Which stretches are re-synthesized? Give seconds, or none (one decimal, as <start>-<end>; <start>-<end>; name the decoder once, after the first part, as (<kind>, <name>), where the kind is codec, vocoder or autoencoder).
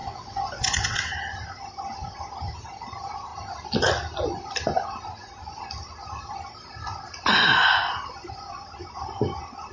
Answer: 0.0-1.0 (vocoder, WaveNeXt)